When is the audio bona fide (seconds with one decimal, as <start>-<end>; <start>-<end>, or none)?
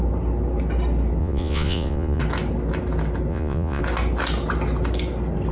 0.0-1.2; 2.2-3.3; 3.8-5.5